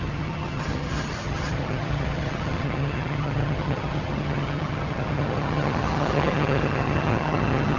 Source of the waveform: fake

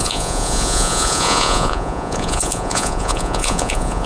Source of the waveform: fake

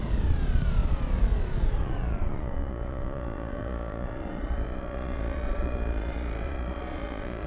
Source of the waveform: fake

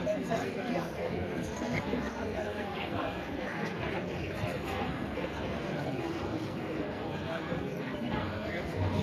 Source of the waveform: fake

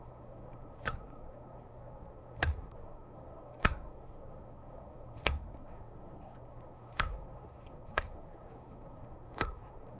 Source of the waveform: fake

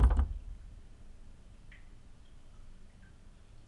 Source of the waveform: real